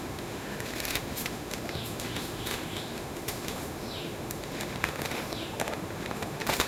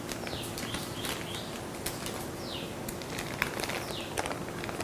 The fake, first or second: first